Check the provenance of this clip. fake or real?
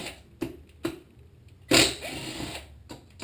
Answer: real